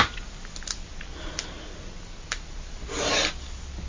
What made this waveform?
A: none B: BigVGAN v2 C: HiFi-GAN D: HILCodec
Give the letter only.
A